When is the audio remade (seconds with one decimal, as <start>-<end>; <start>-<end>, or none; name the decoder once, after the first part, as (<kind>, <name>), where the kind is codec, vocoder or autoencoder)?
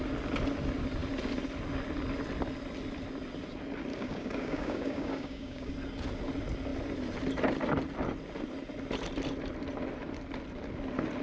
3.9-5.7 (codec, DAC)